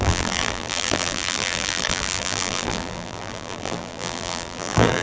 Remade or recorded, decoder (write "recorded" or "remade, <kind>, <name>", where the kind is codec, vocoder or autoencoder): remade, vocoder, BigVGAN v2